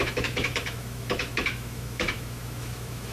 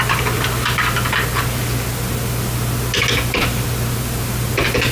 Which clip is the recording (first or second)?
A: second